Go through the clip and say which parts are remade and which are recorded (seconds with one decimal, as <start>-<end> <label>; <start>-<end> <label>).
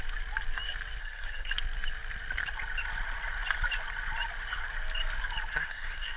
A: 0.0-1.0 recorded; 1.0-1.5 remade; 1.5-5.5 recorded; 5.5-6.2 remade